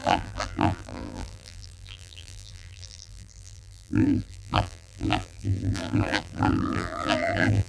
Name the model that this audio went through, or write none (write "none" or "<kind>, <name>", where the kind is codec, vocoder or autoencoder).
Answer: vocoder, BigVGAN v2